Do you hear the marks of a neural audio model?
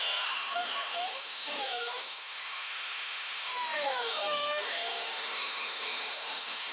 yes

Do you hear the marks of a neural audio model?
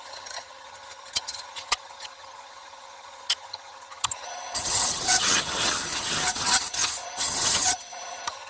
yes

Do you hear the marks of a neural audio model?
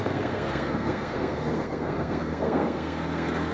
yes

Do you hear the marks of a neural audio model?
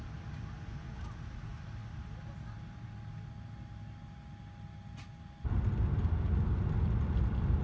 no